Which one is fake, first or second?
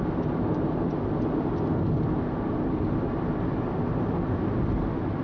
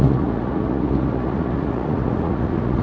second